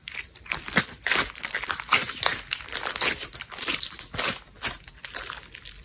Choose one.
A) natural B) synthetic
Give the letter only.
A